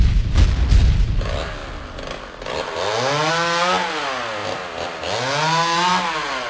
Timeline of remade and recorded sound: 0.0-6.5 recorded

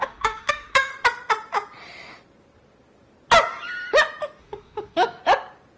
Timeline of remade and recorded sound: 0.0-0.9 remade; 0.9-4.4 recorded; 4.4-5.2 remade; 5.2-5.8 recorded

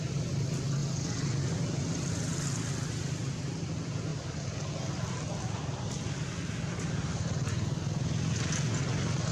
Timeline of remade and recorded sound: 0.0-9.3 recorded